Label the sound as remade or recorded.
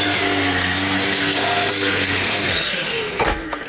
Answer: remade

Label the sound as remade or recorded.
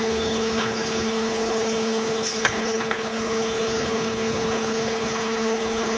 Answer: remade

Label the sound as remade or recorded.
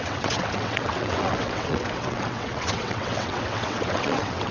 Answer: remade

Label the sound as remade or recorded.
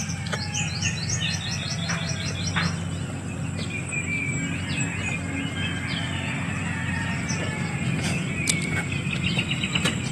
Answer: recorded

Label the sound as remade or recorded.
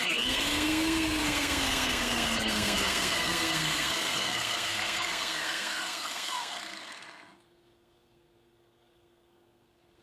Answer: remade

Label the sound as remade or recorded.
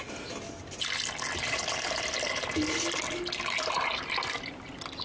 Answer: recorded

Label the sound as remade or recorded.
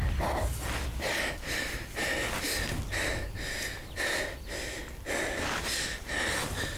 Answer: recorded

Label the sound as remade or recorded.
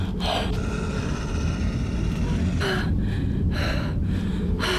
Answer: recorded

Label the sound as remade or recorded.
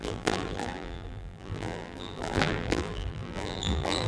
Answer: remade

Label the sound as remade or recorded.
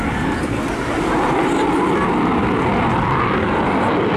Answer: recorded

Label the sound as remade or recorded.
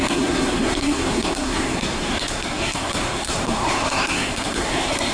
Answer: remade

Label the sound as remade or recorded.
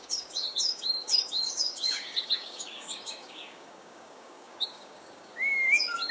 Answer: remade